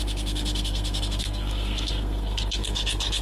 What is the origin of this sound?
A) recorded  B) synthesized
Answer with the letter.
B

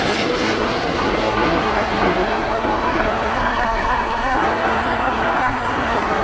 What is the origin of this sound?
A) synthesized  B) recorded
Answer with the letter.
A